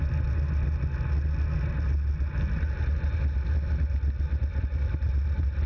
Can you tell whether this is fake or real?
real